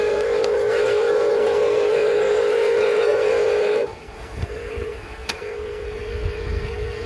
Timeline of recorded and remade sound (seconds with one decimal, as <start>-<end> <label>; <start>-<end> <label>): 0.0-7.1 remade